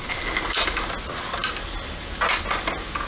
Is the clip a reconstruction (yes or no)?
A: no